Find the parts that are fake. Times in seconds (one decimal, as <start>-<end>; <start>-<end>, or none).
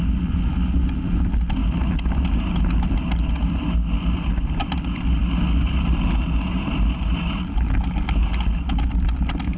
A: none